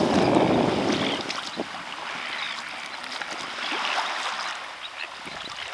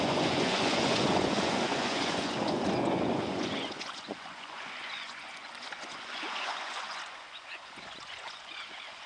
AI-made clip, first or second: second